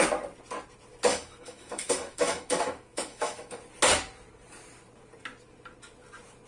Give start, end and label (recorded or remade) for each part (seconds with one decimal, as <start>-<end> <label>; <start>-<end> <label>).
0.0-1.1 recorded; 1.1-3.5 remade; 3.5-6.5 recorded

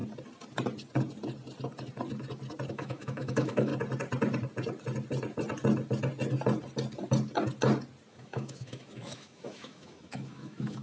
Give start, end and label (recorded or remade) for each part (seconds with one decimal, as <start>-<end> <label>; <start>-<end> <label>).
0.0-2.7 recorded; 2.7-3.7 remade; 3.7-8.1 recorded; 8.1-10.8 remade

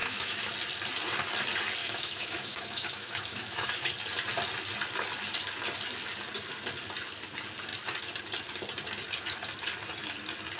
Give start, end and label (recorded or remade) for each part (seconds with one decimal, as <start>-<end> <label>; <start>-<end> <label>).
0.0-0.5 remade; 0.5-1.8 recorded; 1.8-3.9 remade; 3.9-10.6 recorded

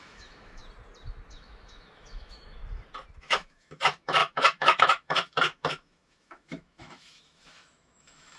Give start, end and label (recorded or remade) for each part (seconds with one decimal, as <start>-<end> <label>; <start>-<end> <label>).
0.0-0.6 remade; 0.6-1.3 recorded; 1.3-2.6 remade; 2.6-3.2 recorded; 3.2-8.4 remade